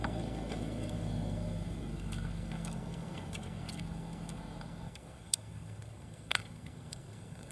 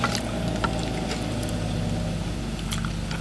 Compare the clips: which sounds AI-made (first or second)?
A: first